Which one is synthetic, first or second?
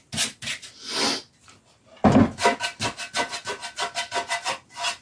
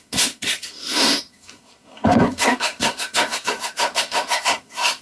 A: second